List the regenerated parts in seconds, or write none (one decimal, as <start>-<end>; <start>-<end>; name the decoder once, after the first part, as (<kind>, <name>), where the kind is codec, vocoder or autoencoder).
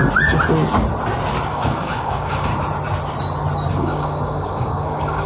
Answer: 1.5-2.5 (codec, DAC); 3.7-5.3